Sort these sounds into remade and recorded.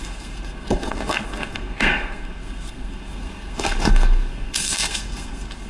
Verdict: remade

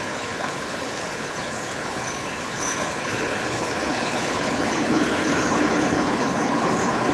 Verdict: remade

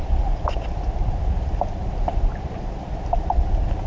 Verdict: recorded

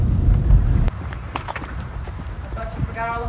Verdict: remade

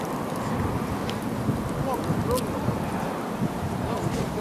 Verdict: recorded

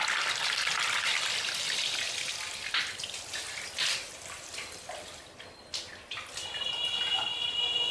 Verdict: recorded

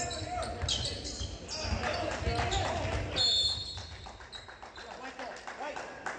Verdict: recorded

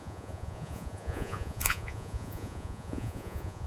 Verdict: remade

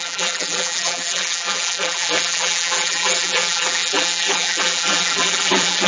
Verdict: remade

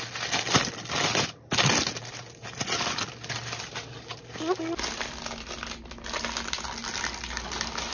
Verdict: recorded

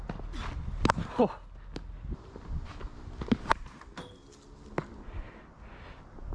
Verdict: recorded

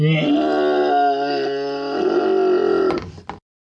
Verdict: recorded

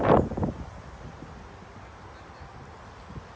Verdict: recorded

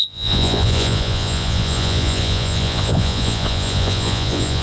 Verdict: remade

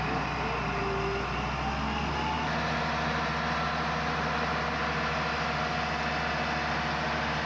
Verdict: recorded